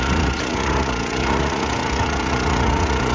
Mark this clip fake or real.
fake